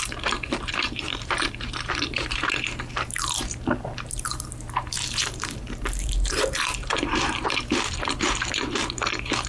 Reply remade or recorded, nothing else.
remade